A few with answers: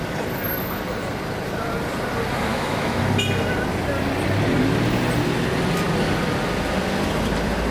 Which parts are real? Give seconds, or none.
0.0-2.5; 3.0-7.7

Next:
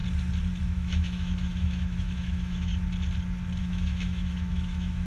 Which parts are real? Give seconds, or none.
0.0-0.6; 2.7-3.6

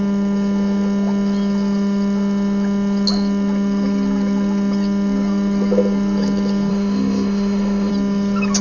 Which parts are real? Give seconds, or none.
0.0-6.7; 7.9-8.6